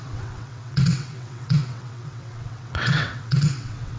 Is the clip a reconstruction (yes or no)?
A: yes